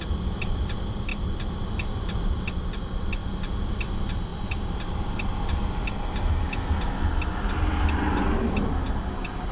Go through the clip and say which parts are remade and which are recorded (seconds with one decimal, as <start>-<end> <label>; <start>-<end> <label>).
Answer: 0.0-9.5 recorded